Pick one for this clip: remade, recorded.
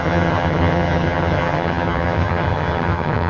remade